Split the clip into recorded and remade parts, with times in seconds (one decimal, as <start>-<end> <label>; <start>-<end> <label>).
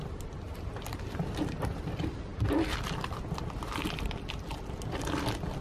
0.0-5.6 recorded